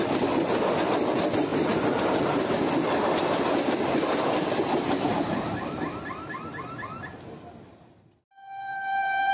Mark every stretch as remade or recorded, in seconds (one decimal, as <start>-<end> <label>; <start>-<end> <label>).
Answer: 0.0-9.3 recorded